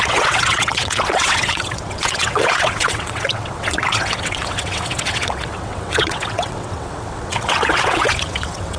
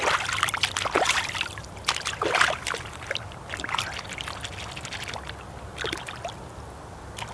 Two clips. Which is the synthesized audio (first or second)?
first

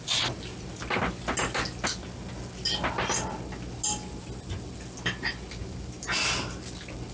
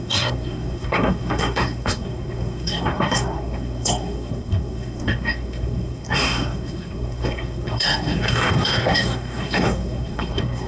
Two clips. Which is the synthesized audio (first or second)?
second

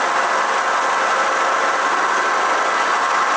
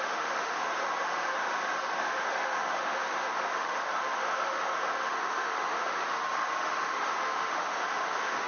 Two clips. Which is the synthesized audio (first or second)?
second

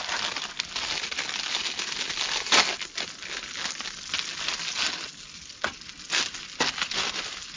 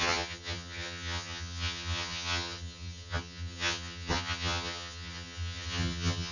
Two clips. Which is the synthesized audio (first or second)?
second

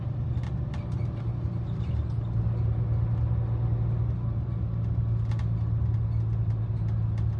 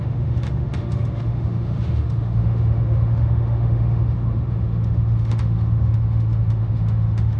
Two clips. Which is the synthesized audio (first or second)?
second